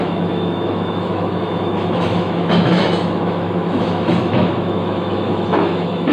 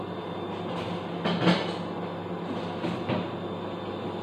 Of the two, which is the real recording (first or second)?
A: second